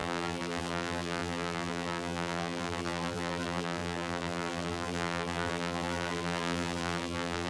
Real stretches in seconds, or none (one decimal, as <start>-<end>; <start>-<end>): none